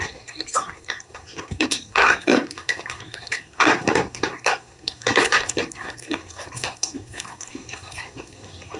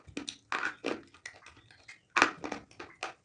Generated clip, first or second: first